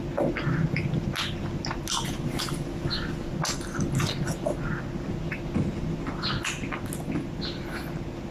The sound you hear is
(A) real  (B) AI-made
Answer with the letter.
A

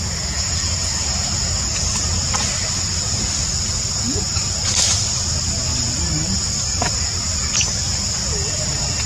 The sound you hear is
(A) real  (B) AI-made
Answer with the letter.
A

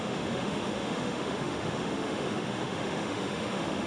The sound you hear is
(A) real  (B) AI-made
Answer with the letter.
B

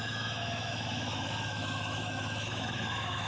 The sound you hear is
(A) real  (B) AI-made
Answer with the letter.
B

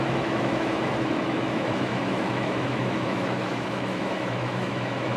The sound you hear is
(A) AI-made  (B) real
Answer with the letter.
A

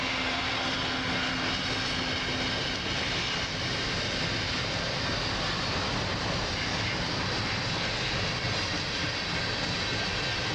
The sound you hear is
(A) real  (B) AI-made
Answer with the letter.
A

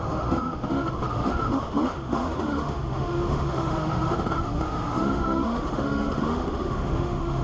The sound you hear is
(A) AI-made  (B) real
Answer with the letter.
A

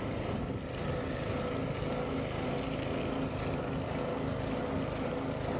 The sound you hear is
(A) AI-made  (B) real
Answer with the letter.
B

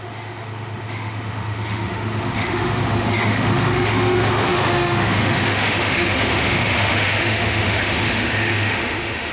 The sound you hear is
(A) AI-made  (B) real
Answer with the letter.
A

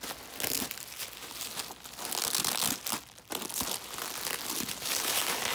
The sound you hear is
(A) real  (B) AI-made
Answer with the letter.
A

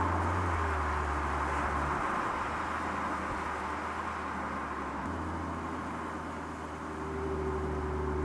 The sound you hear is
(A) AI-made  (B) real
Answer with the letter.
B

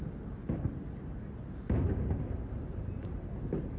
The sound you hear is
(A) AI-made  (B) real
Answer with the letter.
B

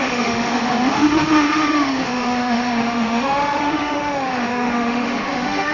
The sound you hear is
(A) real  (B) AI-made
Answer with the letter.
B